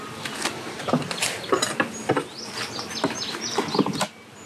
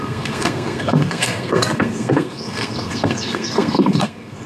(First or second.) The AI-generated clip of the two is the second